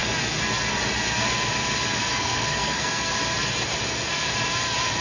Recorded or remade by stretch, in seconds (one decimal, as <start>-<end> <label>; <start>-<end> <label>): 0.0-2.1 recorded; 2.1-3.1 remade; 3.1-5.0 recorded